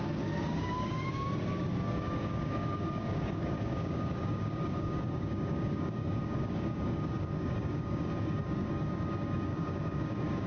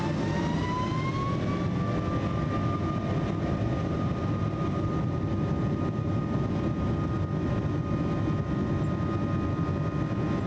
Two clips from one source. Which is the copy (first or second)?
first